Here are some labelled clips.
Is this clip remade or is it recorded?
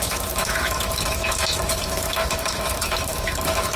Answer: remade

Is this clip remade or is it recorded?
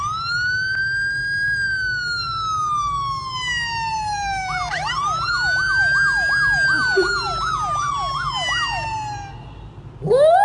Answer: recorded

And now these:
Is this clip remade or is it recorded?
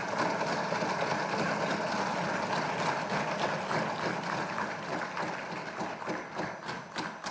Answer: recorded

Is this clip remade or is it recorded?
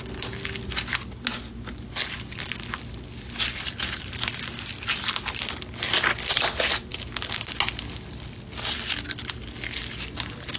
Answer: recorded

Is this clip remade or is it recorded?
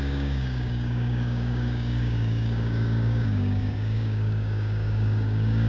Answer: remade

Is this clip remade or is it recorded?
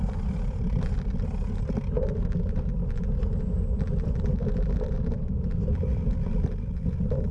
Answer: recorded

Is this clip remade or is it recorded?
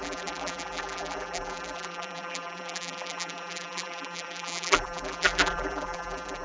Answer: remade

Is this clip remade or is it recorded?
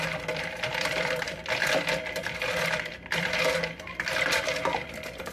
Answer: remade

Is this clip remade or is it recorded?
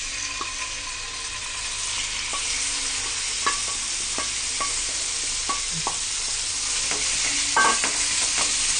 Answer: recorded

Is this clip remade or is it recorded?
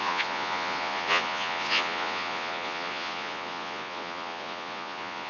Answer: remade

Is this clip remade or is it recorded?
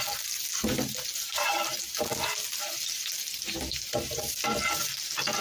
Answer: recorded